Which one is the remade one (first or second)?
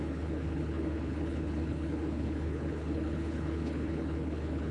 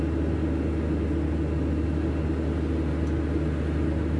first